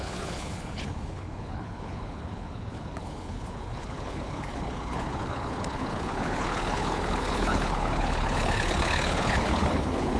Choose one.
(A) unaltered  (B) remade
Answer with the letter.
B